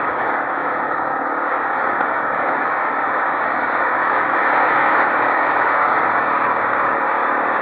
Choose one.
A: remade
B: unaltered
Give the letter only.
A